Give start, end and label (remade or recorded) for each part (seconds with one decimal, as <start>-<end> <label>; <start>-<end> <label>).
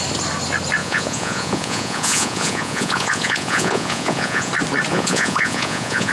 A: 0.0-0.8 recorded; 0.8-4.5 remade; 4.5-4.9 recorded; 4.9-6.1 remade